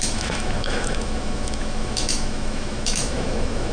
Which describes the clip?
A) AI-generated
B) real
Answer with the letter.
A